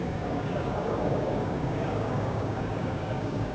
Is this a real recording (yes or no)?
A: no